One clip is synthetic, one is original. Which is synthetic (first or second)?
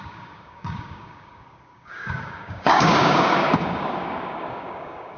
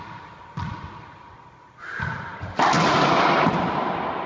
first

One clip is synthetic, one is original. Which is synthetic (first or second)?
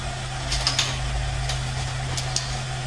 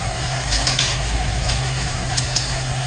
second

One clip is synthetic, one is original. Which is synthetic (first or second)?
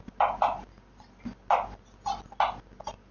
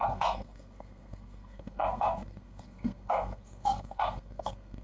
second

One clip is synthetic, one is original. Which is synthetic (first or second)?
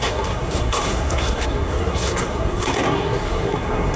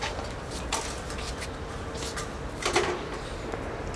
first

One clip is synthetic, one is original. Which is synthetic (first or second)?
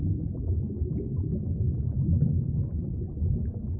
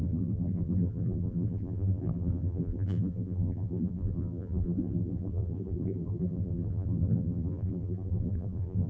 second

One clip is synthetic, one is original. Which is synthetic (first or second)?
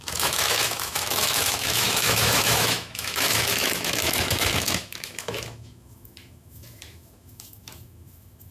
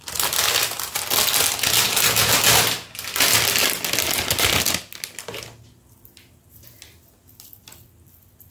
first